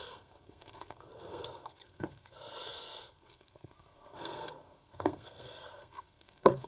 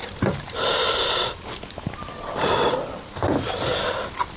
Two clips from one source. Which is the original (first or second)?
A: second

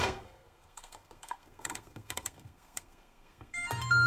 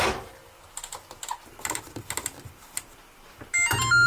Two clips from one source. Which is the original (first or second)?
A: second